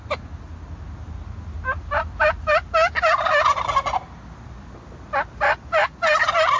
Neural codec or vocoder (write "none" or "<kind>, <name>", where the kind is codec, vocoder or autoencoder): none